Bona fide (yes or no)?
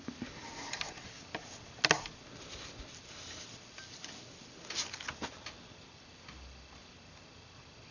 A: yes